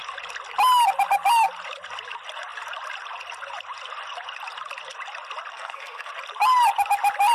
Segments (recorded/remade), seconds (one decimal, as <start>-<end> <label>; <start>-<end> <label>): 0.0-5.5 recorded; 5.5-6.1 remade; 6.1-7.3 recorded

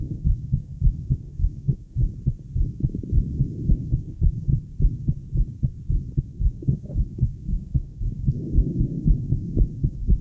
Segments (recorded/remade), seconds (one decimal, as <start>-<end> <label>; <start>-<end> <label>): 0.0-2.0 remade; 2.0-3.7 recorded; 3.7-4.5 remade; 4.5-6.2 recorded; 6.2-10.2 remade

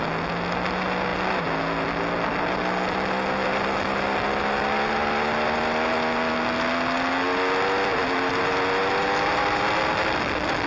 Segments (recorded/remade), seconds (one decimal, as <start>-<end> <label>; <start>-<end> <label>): 0.0-10.7 recorded

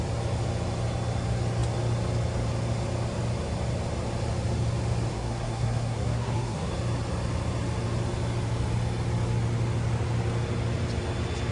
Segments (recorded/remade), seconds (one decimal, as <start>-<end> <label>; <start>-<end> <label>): 0.0-5.1 recorded; 5.1-6.7 remade; 6.7-11.5 recorded

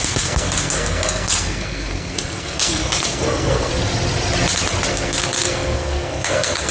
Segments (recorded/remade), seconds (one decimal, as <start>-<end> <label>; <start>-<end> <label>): 0.0-3.7 remade; 3.7-4.9 recorded; 4.9-6.7 remade

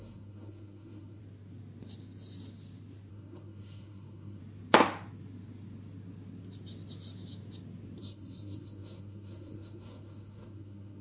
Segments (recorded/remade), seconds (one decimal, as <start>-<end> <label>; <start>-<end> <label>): 0.0-1.2 remade; 1.2-3.1 recorded; 3.1-4.4 remade; 4.4-8.0 recorded; 8.0-11.0 remade

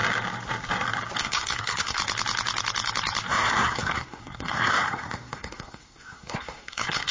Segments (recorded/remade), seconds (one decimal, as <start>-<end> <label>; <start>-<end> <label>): 0.0-1.2 recorded; 1.2-2.0 remade; 2.0-3.3 recorded; 3.3-7.1 remade

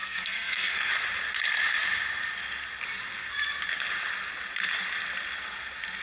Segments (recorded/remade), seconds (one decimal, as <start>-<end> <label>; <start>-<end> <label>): 0.0-0.9 remade; 0.9-6.0 recorded